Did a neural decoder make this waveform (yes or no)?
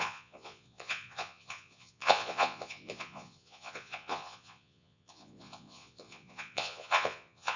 yes